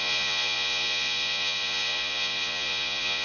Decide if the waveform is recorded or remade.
remade